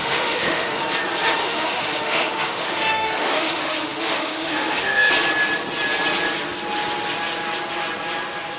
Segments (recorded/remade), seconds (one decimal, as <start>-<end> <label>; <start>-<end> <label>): 0.0-0.8 remade; 0.8-1.4 recorded; 1.4-5.1 remade; 5.1-8.6 recorded